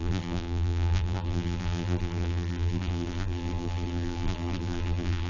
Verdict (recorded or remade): remade